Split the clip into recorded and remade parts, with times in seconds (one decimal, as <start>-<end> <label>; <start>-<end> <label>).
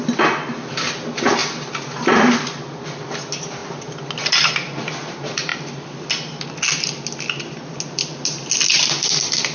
0.0-9.5 recorded